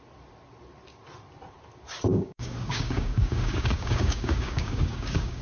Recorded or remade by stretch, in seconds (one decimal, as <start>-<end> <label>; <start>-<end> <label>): 0.0-2.1 recorded; 2.1-5.4 remade